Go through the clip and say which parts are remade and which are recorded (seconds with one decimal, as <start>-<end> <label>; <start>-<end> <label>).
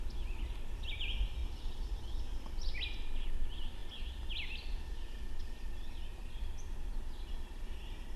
0.0-8.2 recorded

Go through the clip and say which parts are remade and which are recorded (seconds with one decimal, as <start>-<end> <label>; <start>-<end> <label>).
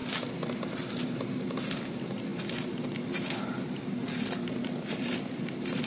0.0-5.9 recorded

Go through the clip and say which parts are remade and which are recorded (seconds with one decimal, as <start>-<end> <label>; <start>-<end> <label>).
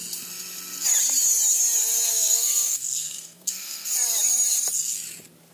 0.0-2.1 recorded; 2.1-3.9 remade; 3.9-5.5 recorded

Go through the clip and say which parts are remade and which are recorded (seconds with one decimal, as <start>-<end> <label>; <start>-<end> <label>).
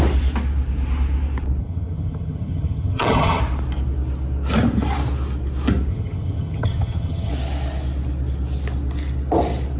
0.0-1.6 recorded; 1.6-3.4 remade; 3.4-5.9 recorded; 5.9-7.3 remade; 7.3-9.8 recorded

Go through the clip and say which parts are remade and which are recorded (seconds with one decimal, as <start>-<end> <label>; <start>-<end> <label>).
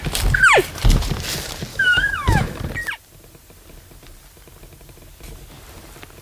0.0-1.7 recorded; 1.7-2.6 remade; 2.6-6.2 recorded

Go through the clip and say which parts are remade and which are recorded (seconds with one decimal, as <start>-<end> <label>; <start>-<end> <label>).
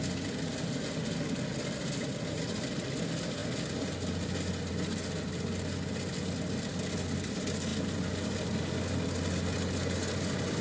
0.0-10.6 recorded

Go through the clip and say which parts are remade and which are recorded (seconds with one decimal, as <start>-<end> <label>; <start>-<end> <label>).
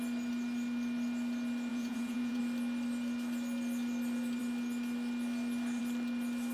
0.0-1.7 recorded; 1.7-2.4 remade; 2.4-6.5 recorded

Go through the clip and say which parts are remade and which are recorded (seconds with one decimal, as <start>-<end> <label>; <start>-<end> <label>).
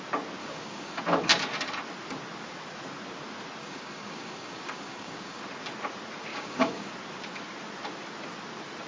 0.0-0.4 recorded; 0.4-1.0 remade; 1.0-3.6 recorded; 3.6-5.4 remade; 5.4-6.3 recorded; 6.3-6.9 remade; 6.9-8.9 recorded